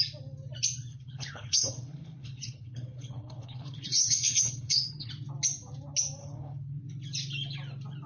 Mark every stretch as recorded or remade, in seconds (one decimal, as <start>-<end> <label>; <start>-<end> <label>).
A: 0.0-0.9 recorded; 0.9-5.1 remade; 5.1-6.2 recorded; 6.2-6.8 remade; 6.8-8.1 recorded